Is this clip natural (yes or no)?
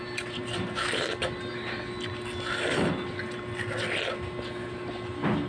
yes